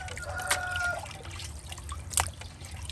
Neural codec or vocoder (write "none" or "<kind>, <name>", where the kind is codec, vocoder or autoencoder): none